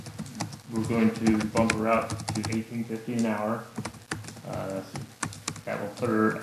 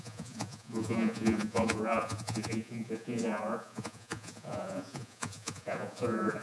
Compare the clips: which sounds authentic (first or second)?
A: first